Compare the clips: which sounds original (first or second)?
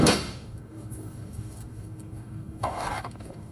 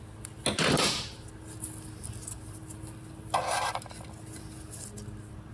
second